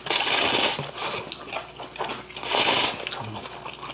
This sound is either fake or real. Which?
real